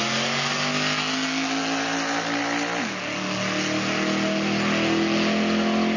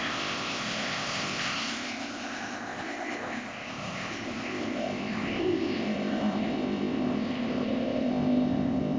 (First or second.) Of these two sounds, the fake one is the second